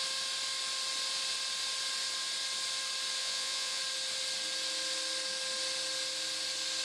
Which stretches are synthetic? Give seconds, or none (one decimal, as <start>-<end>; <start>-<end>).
3.2-3.8